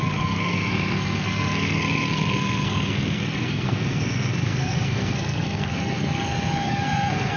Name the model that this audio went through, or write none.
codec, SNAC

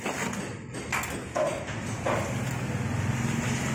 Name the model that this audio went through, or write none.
none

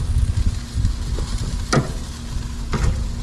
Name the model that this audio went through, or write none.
none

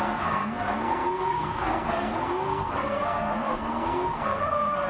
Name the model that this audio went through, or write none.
codec, SNAC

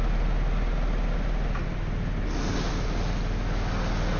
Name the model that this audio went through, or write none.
none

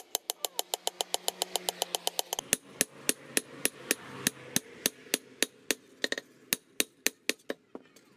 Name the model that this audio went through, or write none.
none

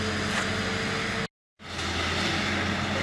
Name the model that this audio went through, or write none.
none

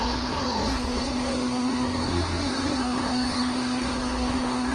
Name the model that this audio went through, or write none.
codec, SNAC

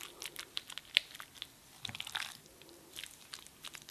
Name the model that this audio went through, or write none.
none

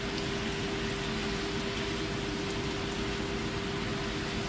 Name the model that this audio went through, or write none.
none